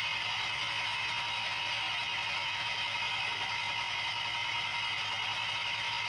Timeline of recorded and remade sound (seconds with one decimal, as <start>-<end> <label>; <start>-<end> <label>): 0.0-2.4 recorded; 2.4-3.0 remade; 3.0-6.1 recorded